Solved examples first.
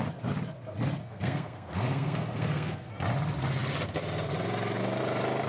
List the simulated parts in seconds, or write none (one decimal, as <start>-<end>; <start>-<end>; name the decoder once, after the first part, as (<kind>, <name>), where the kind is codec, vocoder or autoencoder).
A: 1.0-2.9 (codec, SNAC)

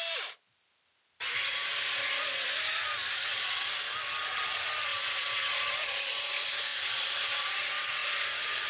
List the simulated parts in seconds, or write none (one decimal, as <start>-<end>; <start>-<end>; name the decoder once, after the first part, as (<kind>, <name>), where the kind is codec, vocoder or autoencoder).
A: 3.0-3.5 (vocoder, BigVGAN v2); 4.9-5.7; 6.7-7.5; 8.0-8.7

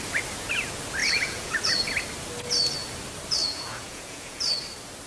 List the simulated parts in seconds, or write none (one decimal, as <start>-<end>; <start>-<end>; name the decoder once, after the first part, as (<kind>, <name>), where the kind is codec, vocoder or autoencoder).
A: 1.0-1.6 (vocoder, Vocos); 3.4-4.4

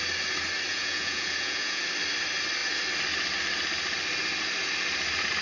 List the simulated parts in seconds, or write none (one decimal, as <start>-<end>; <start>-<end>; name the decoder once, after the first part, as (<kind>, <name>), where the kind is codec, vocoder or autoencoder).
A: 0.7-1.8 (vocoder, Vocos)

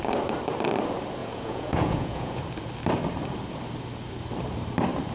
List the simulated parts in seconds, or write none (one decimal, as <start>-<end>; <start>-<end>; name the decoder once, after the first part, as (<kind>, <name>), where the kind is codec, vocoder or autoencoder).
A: 1.2-2.4 (vocoder, Vocos)

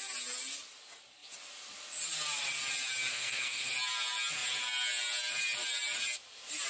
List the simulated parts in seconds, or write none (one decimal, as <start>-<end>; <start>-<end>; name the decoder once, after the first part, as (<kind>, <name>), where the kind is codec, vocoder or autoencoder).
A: 3.1-3.7 (codec, SNAC)

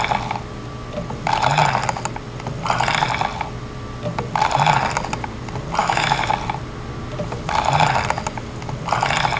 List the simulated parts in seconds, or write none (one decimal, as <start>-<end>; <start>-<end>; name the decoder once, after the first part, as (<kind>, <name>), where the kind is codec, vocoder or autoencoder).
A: 5.8-6.3 (autoencoder, DAC-VAE)

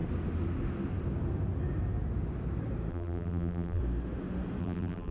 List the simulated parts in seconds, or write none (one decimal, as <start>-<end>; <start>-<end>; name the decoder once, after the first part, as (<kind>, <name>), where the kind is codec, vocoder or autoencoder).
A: 2.9-3.8 (vocoder, BigVGAN v2); 4.6-5.1